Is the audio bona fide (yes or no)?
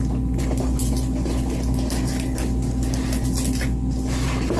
yes